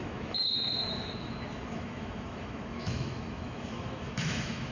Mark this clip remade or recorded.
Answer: remade